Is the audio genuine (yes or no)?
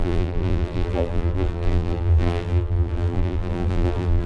no